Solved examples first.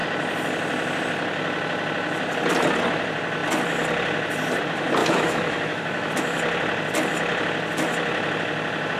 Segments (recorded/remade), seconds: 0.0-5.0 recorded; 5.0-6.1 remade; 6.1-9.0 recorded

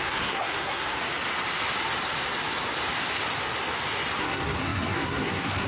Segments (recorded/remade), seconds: 0.0-1.0 remade; 1.0-4.2 recorded; 4.2-5.7 remade

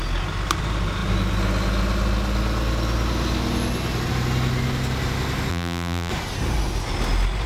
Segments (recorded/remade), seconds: 0.0-5.5 recorded; 5.5-6.1 remade; 6.1-7.5 recorded

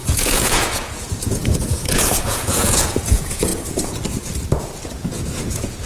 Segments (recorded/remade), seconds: 0.0-3.5 remade; 3.5-5.5 recorded; 5.5-5.9 remade

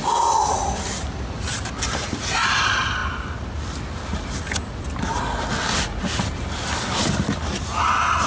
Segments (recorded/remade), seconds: 0.0-8.3 recorded